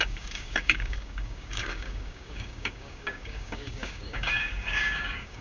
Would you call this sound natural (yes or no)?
no